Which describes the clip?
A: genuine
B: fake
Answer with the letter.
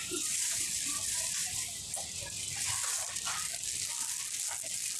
A